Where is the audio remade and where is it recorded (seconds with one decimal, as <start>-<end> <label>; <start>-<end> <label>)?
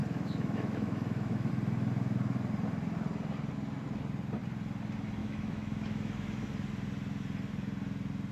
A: 0.0-1.5 remade; 1.5-5.2 recorded; 5.2-6.5 remade; 6.5-8.3 recorded